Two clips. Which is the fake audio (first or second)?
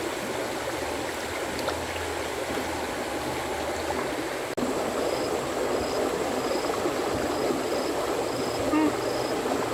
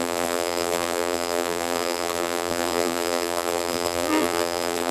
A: second